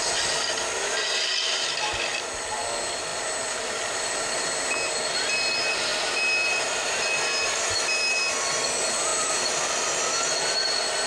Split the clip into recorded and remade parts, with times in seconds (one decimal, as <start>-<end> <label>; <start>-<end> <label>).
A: 0.0-3.1 recorded; 3.1-4.5 remade; 4.5-11.1 recorded